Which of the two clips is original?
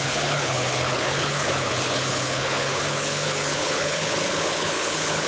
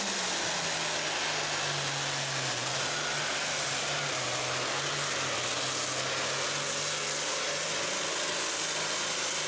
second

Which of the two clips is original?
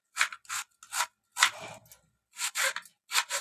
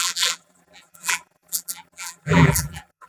first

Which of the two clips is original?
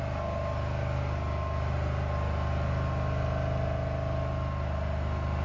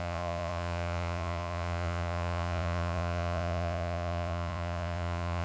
first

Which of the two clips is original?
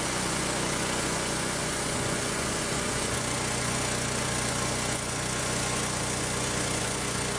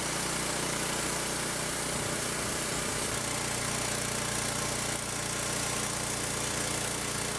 second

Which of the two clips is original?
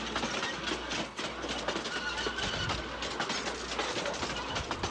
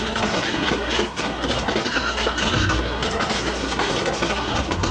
first